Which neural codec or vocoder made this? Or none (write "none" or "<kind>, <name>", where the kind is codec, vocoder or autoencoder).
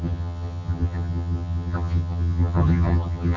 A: vocoder, HiFi-GAN